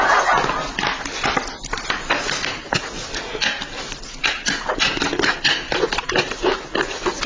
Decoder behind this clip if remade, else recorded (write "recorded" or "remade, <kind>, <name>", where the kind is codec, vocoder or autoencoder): recorded